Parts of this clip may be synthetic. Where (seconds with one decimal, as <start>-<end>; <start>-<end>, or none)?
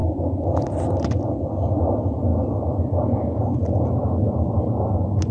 none